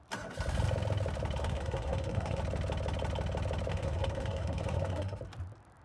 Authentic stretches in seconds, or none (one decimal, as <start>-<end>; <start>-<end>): 0.0-1.4; 2.4-3.7; 5.2-5.8